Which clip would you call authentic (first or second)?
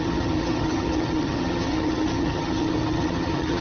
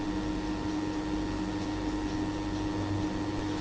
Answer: second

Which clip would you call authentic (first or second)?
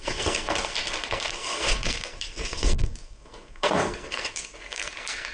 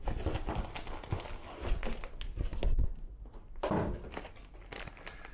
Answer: second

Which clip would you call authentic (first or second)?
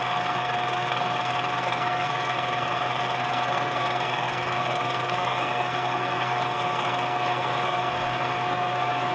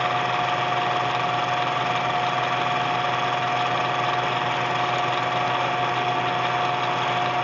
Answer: second